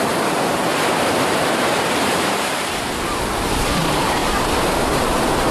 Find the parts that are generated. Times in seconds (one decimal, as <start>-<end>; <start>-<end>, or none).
0.0-5.5